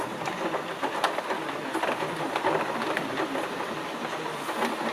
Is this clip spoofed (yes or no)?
no